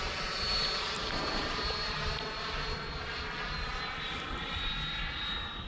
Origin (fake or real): real